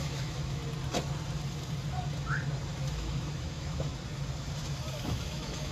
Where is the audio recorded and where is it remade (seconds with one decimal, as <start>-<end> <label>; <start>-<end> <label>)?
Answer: 0.0-0.6 remade; 0.6-2.7 recorded; 2.7-3.9 remade; 3.9-5.0 recorded; 5.0-5.7 remade